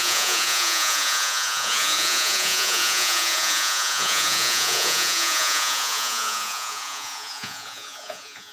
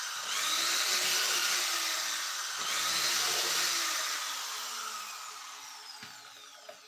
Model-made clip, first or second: first